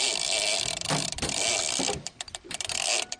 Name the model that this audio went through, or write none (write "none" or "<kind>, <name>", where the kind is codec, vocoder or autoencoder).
none